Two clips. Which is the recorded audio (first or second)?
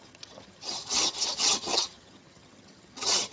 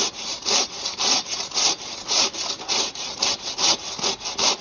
second